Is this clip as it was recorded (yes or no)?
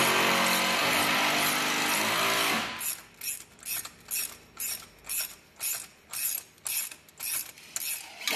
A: yes